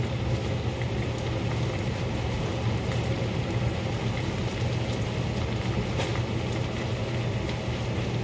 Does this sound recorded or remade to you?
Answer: recorded